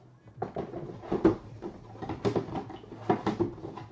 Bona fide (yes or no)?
yes